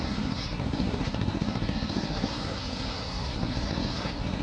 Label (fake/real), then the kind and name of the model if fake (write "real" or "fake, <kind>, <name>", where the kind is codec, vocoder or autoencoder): fake, codec, SNAC